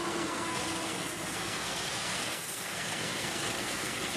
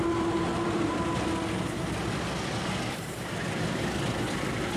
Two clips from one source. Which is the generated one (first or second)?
first